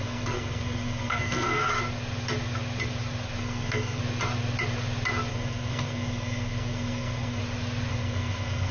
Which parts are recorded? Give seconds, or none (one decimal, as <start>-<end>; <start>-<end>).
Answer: 1.7-3.4; 4.0-5.3; 7.4-7.9